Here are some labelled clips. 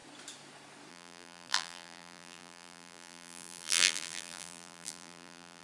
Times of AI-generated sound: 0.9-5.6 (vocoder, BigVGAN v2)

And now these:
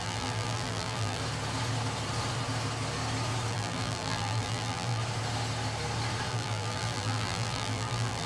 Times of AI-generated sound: 0.0-1.2 (vocoder, BigVGAN v2); 3.5-5.0; 6.3-8.3

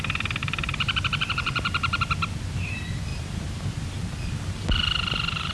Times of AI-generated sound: 0.4-2.0 (vocoder, BigVGAN v2); 3.1-3.7

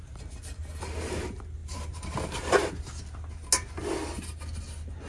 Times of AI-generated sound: 1.6-2.7 (vocoder, BigVGAN v2)

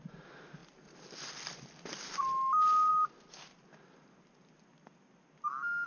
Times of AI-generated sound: 0.6-2.1 (vocoder, BigVGAN v2)